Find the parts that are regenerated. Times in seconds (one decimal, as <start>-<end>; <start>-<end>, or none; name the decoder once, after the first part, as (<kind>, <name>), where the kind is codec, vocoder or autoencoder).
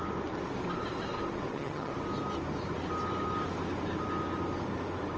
1.5-1.9 (vocoder, HiFi-GAN)